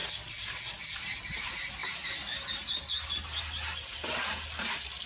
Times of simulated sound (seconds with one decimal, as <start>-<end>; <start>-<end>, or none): none